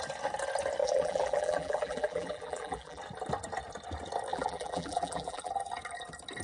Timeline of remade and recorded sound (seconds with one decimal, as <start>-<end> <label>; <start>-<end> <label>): 0.0-0.8 recorded; 0.8-3.0 remade; 3.0-4.3 recorded; 4.3-5.5 remade; 5.5-6.4 recorded